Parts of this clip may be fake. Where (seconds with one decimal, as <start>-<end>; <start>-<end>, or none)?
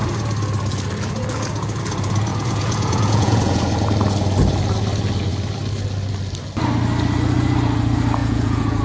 2.3-3.6; 8.2-8.8